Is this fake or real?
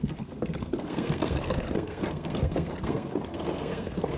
fake